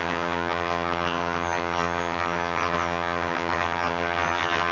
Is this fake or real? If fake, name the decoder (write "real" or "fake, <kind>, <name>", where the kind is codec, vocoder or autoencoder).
fake, vocoder, HiFi-GAN